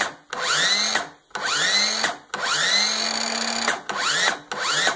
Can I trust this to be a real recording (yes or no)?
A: yes